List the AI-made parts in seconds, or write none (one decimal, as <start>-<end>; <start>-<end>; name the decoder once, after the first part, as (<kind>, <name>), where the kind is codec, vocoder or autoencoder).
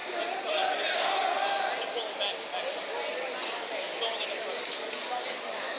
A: 3.5-3.9 (codec, DAC); 5.3-5.8